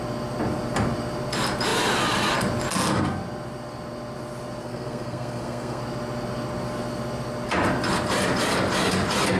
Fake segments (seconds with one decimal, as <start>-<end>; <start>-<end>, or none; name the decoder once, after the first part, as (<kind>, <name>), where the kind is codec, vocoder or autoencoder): 4.6-5.8 (codec, SNAC)